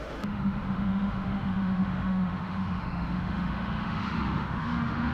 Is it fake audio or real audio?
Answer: fake